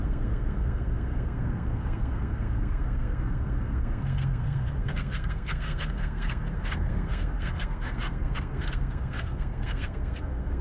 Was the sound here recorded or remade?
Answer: remade